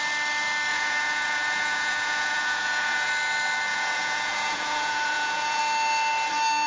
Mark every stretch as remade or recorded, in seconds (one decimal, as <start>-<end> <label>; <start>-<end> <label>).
0.0-0.7 recorded; 0.7-3.1 remade; 3.1-3.7 recorded; 3.7-5.6 remade; 5.6-6.7 recorded